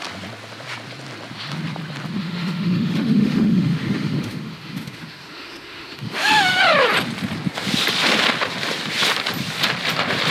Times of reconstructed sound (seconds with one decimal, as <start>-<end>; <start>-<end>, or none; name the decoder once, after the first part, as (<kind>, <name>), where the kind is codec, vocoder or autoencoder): 2.2-6.6 (autoencoder, DAC-VAE)